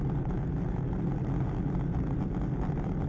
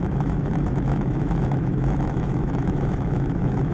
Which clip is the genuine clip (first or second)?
first